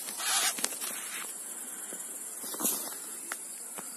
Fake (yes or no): yes